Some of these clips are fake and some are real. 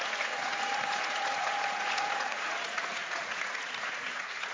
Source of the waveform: fake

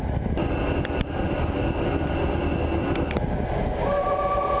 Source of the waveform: real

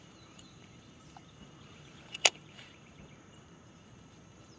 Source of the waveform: fake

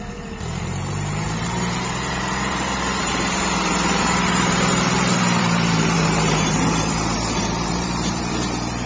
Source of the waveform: fake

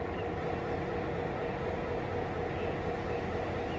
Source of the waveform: real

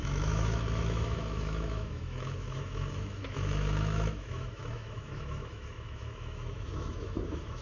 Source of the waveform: fake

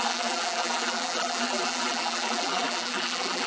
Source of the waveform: fake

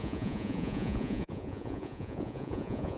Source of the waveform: fake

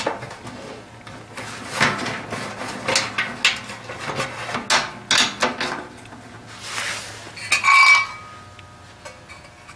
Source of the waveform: real